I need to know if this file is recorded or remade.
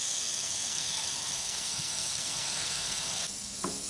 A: remade